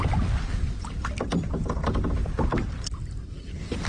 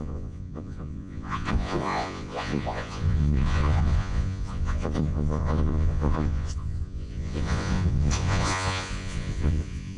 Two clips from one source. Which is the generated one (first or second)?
second